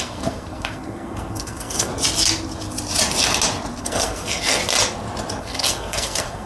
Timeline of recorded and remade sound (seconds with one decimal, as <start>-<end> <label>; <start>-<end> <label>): 0.0-1.9 remade; 1.9-3.8 recorded; 3.8-4.6 remade; 4.6-5.4 recorded; 5.4-6.5 remade